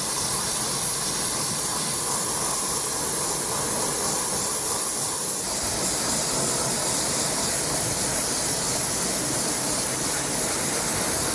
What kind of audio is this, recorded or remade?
remade